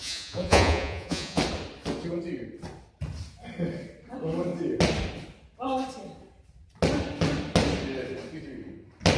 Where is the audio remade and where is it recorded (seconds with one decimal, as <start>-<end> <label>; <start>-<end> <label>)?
0.0-1.4 remade; 1.4-9.2 recorded